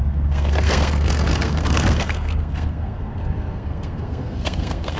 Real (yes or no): no